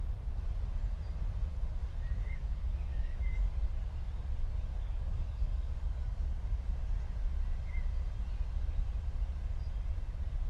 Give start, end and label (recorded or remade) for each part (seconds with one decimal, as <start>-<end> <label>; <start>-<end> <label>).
0.0-1.5 recorded; 1.5-3.5 remade; 3.5-4.7 recorded; 4.7-6.6 remade; 6.6-10.5 recorded